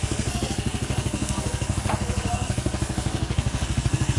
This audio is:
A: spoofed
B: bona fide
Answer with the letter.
A